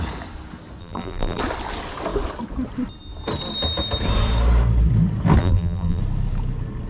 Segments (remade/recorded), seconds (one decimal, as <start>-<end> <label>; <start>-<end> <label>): 0.0-0.8 recorded; 0.8-1.4 remade; 1.4-5.4 recorded; 5.4-6.0 remade; 6.0-6.9 recorded